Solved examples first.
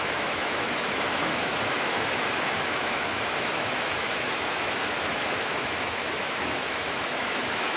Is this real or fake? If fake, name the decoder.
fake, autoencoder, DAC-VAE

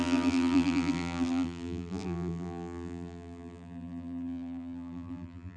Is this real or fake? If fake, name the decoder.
fake, vocoder, BigVGAN v2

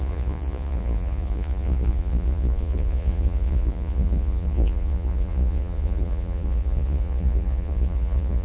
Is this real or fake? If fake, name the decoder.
fake, vocoder, Vocos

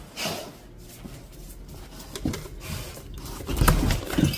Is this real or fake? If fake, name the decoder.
real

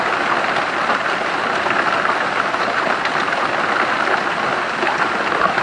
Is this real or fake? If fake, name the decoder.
real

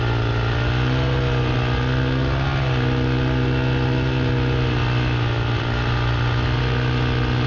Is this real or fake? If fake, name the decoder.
real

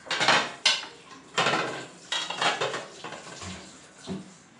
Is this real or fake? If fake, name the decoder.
real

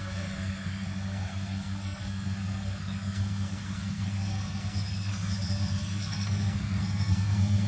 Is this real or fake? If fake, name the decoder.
fake, codec, SNAC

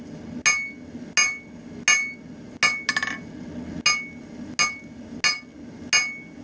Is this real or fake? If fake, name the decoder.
real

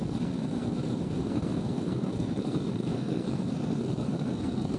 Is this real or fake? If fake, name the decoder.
fake, codec, SNAC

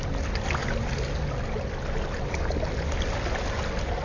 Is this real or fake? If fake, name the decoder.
real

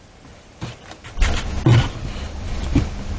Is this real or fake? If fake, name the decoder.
real